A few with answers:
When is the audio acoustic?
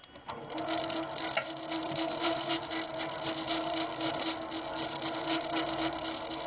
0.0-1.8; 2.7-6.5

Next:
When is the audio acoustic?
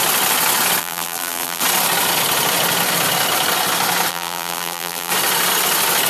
0.0-0.8; 1.6-4.1; 5.1-6.1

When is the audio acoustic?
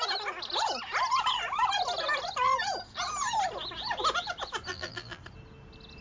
0.0-4.7; 5.2-6.0